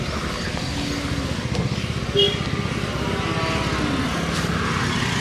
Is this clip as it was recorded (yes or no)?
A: yes